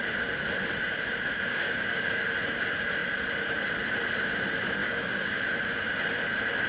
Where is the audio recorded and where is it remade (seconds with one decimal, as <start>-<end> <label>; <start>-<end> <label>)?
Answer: 0.0-1.5 recorded; 1.5-2.2 remade; 2.2-4.8 recorded; 4.8-5.3 remade; 5.3-6.7 recorded